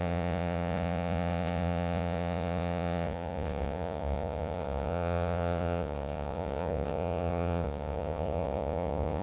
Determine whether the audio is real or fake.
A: fake